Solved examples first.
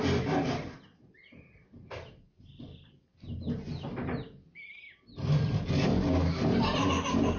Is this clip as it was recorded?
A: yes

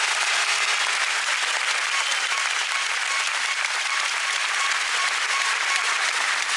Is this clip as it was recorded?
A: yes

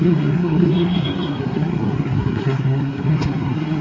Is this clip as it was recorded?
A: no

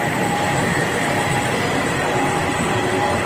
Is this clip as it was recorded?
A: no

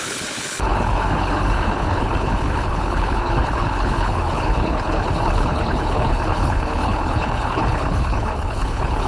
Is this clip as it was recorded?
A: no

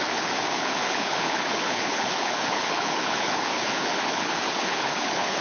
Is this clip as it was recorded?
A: no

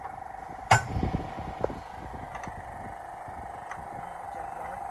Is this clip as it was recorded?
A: yes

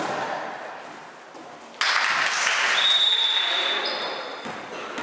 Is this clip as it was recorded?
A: yes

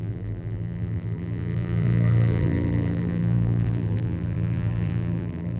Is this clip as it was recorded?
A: no